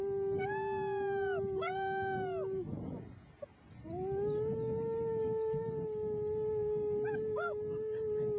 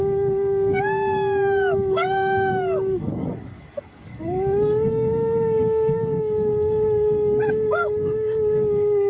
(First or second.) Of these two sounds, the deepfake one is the second